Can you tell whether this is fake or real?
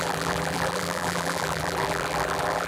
fake